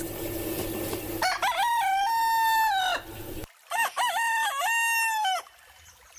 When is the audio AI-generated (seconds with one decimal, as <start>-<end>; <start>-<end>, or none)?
none